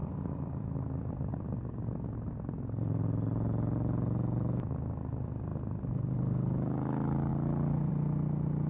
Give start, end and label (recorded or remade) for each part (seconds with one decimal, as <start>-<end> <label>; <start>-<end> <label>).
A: 0.0-8.7 recorded